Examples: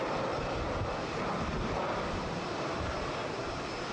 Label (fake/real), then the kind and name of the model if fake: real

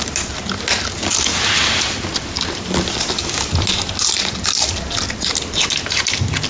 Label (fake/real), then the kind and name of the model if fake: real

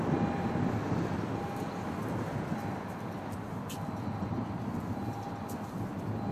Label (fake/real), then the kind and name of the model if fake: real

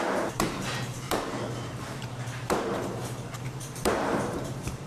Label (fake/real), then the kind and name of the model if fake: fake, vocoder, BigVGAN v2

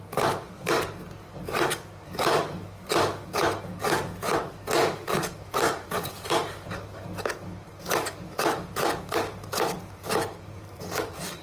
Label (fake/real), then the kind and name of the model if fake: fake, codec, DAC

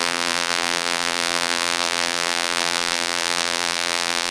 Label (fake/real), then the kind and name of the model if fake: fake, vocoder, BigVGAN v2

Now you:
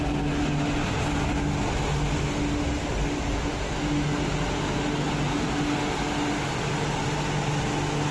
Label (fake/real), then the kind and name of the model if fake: real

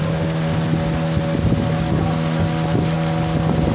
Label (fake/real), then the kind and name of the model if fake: real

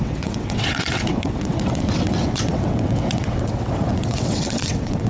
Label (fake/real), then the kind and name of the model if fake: fake, vocoder, WaveNeXt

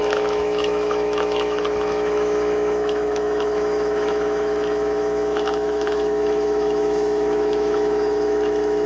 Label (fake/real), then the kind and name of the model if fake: fake, autoencoder, DAC-VAE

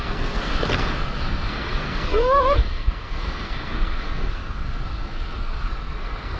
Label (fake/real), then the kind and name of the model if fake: fake, codec, SNAC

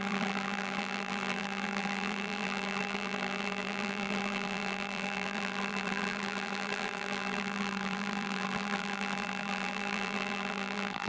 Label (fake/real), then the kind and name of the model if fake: fake, vocoder, BigVGAN v2